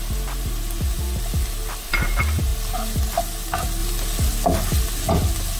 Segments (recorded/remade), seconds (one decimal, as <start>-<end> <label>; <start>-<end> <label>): 0.0-5.6 recorded